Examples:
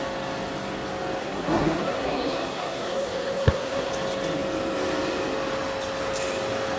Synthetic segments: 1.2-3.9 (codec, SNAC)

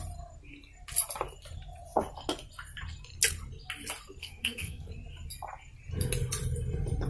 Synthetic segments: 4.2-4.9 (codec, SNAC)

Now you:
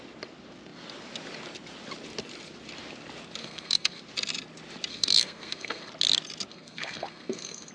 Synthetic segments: 3.4-4.0 (codec, SNAC); 4.9-5.9; 6.5-7.7

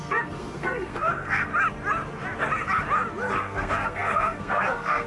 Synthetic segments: 0.0-1.5 (codec, SNAC); 3.3-5.1

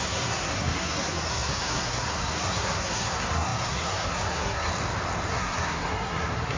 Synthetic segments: 0.0-4.7 (codec, SNAC); 5.3-6.6

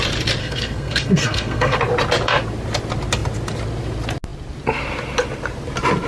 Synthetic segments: 0.4-1.8 (codec, SNAC)